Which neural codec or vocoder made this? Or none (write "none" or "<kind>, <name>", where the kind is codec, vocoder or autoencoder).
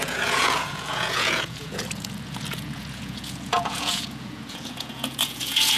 vocoder, Vocos